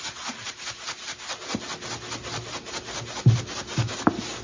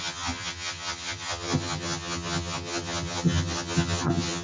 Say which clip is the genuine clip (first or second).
first